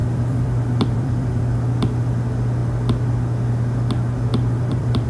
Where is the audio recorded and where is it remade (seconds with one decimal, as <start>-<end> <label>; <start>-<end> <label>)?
0.0-1.5 remade; 1.5-4.3 recorded; 4.3-5.1 remade